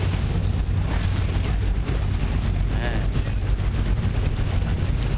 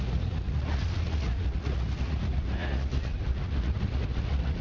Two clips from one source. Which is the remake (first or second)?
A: second